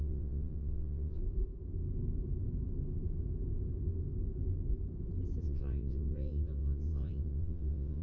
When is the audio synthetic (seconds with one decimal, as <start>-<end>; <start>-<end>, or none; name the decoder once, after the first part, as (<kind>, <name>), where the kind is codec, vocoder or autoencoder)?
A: 0.0-1.2 (vocoder, WaveNeXt); 5.4-8.0